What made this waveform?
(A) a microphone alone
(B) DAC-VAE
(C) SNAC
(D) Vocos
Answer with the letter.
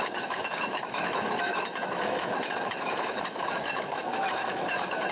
B